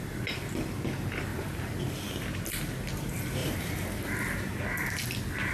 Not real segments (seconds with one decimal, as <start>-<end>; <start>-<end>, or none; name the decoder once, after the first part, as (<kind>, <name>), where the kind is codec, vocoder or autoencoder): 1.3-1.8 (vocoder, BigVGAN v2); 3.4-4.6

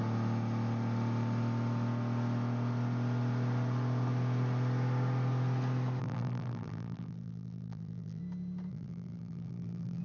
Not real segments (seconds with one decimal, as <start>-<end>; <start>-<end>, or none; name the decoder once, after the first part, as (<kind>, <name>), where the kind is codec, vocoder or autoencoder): 6.0-8.2 (vocoder, BigVGAN v2); 8.7-10.0

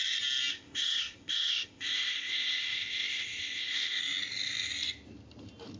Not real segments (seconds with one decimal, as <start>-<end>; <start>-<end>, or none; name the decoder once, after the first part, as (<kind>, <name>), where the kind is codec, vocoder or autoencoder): 0.5-4.0 (codec, ZipCodec)

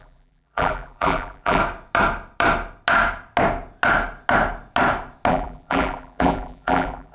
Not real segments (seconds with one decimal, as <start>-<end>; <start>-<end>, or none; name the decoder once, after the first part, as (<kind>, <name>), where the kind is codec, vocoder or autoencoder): 0.0-1.6 (vocoder, BigVGAN v2); 5.3-7.1